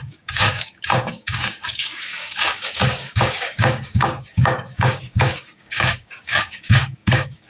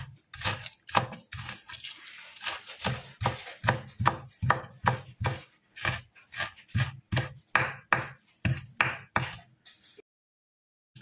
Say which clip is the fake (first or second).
first